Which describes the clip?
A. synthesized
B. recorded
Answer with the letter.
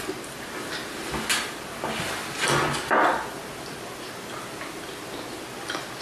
B